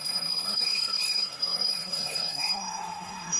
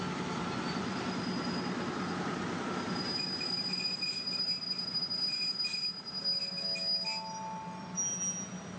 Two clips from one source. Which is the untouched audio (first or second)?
second